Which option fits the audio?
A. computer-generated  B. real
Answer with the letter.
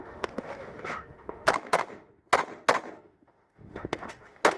A